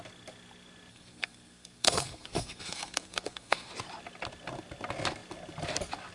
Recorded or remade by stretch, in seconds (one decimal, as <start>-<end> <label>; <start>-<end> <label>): 0.0-0.9 recorded; 0.9-3.7 remade; 3.7-6.1 recorded